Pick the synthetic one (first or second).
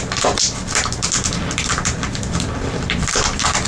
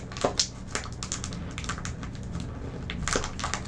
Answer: first